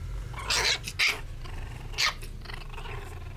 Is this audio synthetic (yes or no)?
no